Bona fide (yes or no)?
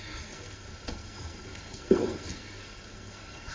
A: no